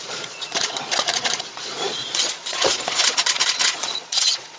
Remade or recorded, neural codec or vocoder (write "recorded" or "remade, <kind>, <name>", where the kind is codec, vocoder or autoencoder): remade, vocoder, Vocos